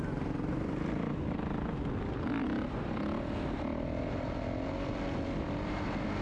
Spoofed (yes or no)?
no